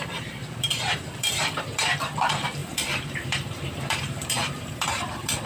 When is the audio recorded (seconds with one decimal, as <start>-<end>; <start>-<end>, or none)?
none